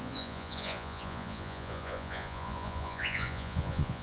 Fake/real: fake